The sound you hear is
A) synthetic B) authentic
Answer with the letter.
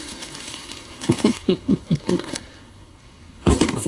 A